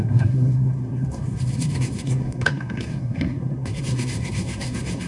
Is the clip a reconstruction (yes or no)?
yes